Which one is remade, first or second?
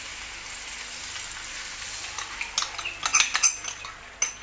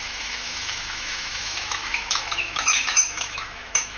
second